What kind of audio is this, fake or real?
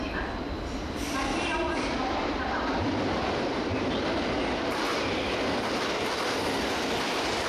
fake